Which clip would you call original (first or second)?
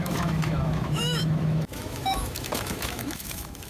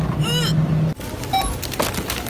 second